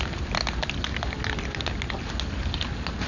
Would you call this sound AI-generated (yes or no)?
no